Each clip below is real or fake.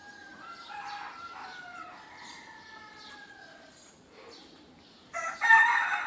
real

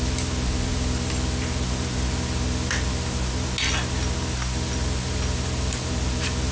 real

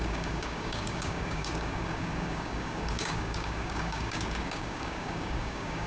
fake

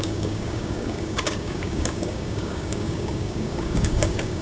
fake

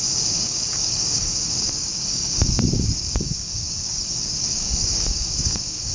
fake